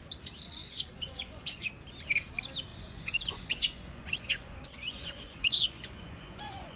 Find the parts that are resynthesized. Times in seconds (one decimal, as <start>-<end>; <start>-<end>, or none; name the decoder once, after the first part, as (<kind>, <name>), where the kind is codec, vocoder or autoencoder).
0.6-1.7 (vocoder, Vocos); 2.7-6.8